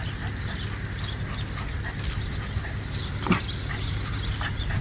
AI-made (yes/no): no